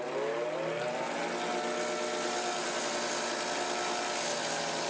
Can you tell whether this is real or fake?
real